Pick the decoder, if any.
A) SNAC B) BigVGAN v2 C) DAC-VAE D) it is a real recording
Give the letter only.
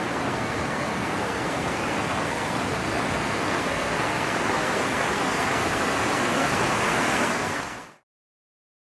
A